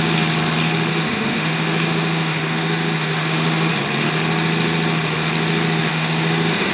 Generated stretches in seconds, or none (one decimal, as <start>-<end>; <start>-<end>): 0.9-3.7; 5.9-6.7